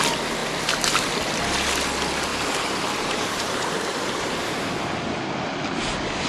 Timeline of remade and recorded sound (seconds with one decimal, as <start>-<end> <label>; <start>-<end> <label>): 0.0-2.3 recorded; 2.3-4.7 remade; 4.7-6.3 recorded